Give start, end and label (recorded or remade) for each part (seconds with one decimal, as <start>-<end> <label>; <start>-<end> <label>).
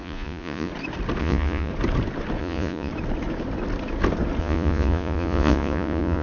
0.0-0.7 remade; 0.7-1.2 recorded; 1.2-1.7 remade; 1.7-2.4 recorded; 2.4-2.9 remade; 2.9-4.4 recorded; 4.4-6.2 remade